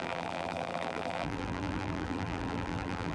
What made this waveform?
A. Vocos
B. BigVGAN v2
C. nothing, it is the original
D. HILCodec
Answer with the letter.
B